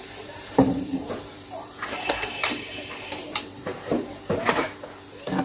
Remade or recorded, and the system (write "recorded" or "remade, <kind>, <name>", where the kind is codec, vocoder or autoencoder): remade, vocoder, BigVGAN v2